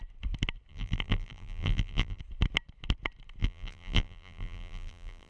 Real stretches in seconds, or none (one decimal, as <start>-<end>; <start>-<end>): 0.0-0.7; 2.2-3.4

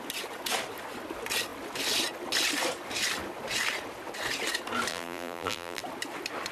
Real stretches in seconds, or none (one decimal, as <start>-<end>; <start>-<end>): 0.0-4.9; 5.8-6.5

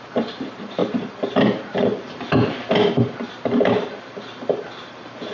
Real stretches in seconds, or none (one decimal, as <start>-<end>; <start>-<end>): none

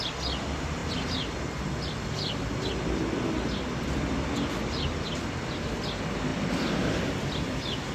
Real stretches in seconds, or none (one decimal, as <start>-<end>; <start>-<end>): 0.0-6.3